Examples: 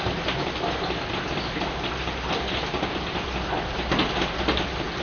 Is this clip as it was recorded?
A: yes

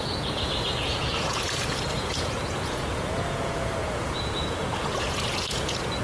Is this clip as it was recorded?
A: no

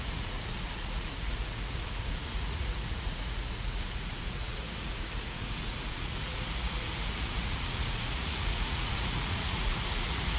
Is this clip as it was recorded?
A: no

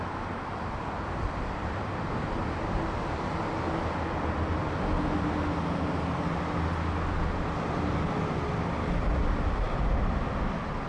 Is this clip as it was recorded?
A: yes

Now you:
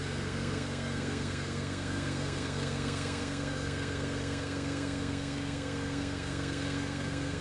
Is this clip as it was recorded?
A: no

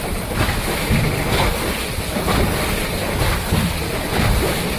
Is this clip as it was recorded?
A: no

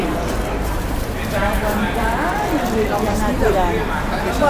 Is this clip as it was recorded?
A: no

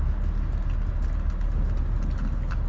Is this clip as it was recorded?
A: yes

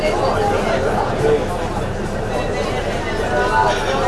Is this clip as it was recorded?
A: yes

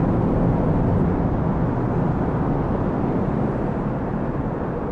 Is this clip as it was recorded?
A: yes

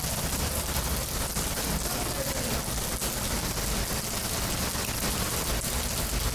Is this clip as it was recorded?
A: yes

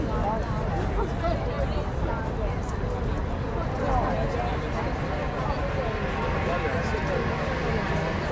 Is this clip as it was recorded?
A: yes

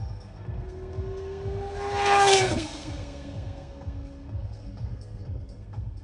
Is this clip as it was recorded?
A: no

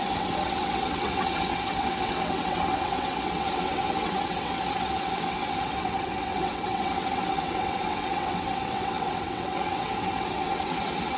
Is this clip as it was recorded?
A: no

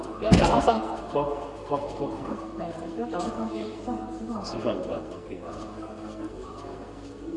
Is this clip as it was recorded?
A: no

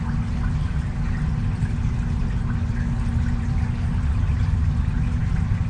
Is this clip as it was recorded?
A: yes